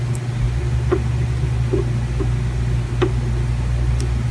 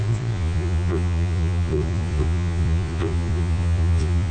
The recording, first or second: first